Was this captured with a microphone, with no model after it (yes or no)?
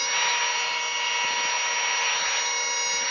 yes